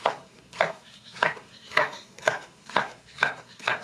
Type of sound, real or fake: fake